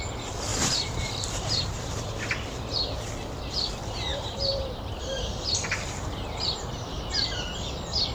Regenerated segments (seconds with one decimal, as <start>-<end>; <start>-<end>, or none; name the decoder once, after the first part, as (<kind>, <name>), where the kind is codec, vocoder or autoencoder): 0.5-1.9 (vocoder, BigVGAN v2); 4.1-7.0